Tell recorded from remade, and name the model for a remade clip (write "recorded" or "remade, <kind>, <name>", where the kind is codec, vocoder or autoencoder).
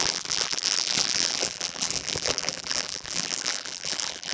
remade, vocoder, BigVGAN v2